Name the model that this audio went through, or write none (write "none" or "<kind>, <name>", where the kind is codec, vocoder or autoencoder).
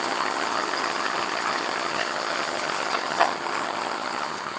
vocoder, HiFi-GAN